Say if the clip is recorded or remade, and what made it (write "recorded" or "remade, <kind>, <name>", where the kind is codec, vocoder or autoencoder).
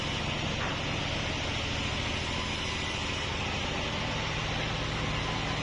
recorded